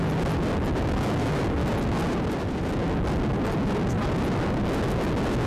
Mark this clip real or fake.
real